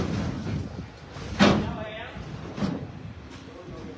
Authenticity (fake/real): real